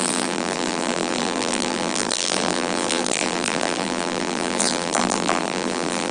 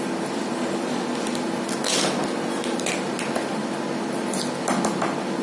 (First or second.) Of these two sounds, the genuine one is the second